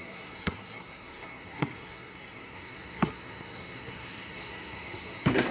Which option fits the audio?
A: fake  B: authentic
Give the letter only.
A